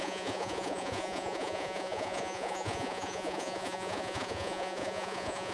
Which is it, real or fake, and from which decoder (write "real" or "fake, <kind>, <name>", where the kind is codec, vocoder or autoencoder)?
fake, vocoder, Vocos